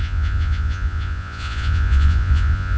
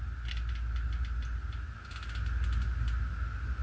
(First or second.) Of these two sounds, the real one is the second